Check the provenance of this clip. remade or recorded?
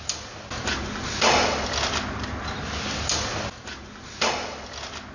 recorded